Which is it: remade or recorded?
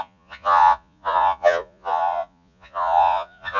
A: remade